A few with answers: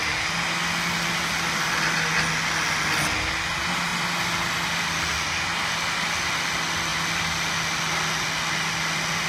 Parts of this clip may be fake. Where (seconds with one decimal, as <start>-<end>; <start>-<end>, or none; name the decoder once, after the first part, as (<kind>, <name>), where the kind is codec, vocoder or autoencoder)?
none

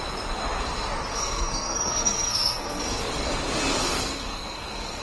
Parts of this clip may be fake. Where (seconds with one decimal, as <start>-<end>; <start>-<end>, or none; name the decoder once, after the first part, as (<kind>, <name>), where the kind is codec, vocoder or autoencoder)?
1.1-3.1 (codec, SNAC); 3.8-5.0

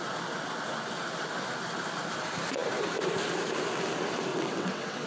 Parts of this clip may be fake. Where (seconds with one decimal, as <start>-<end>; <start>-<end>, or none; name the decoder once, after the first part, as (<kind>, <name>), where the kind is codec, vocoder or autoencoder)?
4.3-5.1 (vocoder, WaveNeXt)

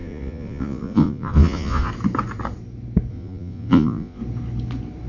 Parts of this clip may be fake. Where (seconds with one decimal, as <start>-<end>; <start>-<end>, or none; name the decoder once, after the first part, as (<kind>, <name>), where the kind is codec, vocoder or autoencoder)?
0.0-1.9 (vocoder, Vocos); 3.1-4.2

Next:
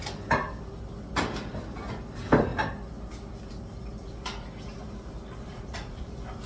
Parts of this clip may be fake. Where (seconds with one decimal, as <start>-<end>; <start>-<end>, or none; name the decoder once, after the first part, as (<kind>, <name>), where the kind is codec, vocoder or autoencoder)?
5.5-6.1 (vocoder, Vocos)

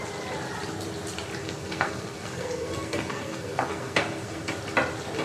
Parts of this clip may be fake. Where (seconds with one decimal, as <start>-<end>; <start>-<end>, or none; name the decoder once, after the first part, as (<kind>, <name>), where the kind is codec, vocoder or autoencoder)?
1.4-4.5 (codec, SNAC)